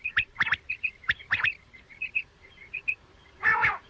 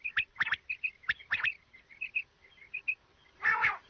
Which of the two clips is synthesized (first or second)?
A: first